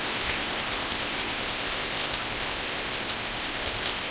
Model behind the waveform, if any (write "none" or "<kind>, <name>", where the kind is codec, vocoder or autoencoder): codec, ZipCodec